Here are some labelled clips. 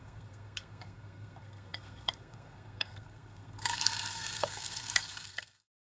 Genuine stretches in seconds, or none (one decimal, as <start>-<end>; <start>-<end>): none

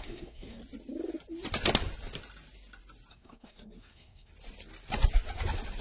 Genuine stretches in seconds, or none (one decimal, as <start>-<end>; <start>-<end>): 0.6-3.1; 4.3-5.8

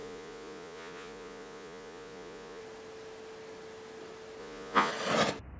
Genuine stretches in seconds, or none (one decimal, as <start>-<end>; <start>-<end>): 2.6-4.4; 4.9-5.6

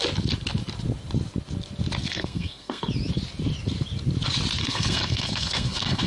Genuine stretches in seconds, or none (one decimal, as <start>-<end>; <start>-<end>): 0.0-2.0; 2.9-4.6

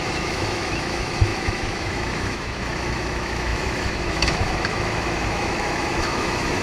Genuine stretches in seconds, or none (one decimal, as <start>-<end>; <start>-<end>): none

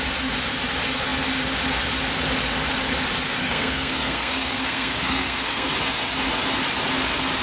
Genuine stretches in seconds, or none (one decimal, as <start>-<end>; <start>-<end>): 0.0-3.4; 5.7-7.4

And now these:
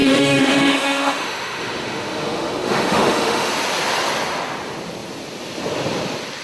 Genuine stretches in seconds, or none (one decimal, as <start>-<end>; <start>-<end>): 3.5-6.4

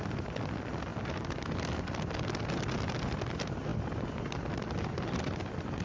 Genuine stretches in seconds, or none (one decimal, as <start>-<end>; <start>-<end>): 0.0-5.8